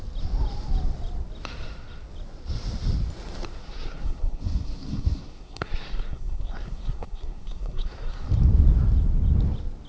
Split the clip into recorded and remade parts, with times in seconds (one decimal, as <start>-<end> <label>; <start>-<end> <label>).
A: 0.0-3.6 recorded; 3.6-8.3 remade; 8.3-9.9 recorded